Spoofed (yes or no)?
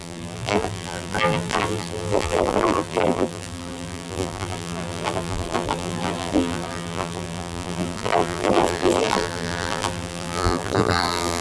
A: yes